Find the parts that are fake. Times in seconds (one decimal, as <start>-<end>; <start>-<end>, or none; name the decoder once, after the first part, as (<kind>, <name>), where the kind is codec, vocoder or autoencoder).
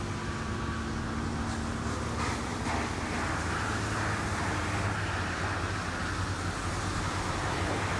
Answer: none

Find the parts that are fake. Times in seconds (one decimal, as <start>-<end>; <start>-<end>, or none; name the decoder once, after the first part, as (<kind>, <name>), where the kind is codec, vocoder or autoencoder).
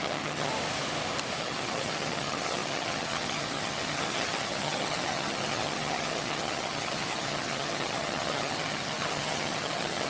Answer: 0.0-0.5 (vocoder, HiFi-GAN); 1.4-10.1